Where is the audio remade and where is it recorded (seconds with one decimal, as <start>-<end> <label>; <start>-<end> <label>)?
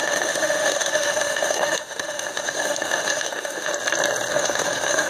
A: 0.0-3.7 remade; 3.7-4.3 recorded; 4.3-5.1 remade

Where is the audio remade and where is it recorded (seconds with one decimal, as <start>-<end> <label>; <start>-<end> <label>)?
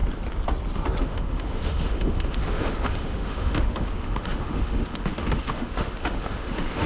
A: 0.0-1.0 recorded; 1.0-6.9 remade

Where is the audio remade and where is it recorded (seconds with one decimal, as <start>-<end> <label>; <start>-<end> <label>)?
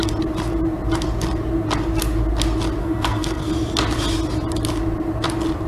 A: 0.0-2.8 recorded; 2.8-3.5 remade; 3.5-5.7 recorded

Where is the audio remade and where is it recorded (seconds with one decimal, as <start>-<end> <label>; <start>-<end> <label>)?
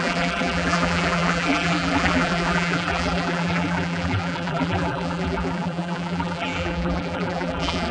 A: 0.0-7.9 remade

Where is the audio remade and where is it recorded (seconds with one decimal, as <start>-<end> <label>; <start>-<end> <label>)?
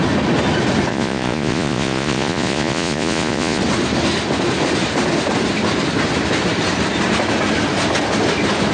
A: 0.0-0.9 recorded; 0.9-3.6 remade; 3.6-8.7 recorded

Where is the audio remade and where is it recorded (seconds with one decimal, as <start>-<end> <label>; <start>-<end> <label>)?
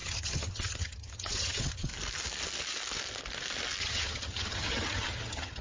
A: 0.0-1.9 remade; 1.9-3.8 recorded; 3.8-5.6 remade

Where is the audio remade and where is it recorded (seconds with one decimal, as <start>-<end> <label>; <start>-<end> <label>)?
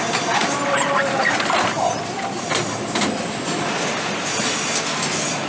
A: 0.0-5.5 recorded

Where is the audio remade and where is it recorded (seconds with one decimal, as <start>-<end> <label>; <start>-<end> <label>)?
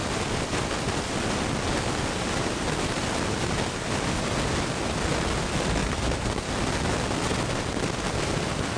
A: 0.0-8.8 recorded